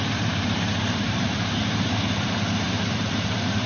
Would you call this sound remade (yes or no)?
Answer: yes